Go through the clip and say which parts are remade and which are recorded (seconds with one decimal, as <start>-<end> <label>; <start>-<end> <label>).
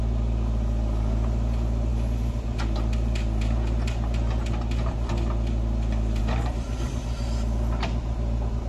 0.0-8.7 recorded